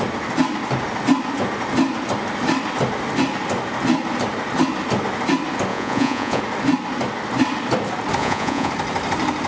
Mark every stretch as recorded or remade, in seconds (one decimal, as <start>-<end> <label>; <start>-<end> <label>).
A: 0.0-5.7 recorded; 5.7-6.4 remade; 6.4-8.2 recorded; 8.2-8.7 remade; 8.7-9.5 recorded